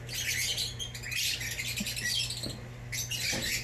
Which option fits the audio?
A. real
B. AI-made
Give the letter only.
A